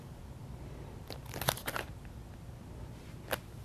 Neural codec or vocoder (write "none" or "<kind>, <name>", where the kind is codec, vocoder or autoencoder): none